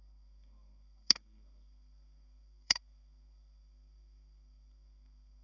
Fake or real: fake